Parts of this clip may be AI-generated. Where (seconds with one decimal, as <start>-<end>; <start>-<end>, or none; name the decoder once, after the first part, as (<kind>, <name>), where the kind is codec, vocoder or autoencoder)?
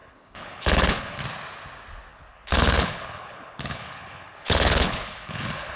0.0-1.2 (codec, HILCodec); 2.1-5.8